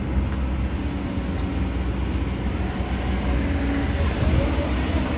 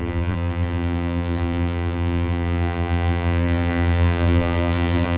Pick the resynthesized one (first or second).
second